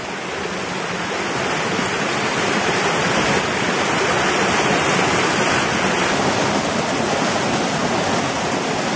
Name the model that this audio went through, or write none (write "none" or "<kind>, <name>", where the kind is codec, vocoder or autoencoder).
none